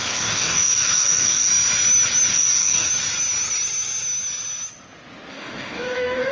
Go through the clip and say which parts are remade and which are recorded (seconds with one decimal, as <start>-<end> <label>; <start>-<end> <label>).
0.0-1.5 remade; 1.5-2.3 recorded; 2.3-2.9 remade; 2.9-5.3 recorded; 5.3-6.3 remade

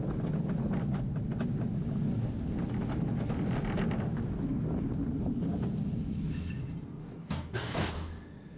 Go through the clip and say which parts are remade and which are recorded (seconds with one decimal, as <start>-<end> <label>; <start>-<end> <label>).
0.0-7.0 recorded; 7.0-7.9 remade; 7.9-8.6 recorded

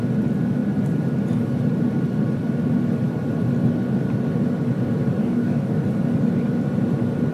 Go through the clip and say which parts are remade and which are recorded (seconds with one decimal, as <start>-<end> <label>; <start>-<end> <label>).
0.0-5.2 recorded; 5.2-5.8 remade; 5.8-7.3 recorded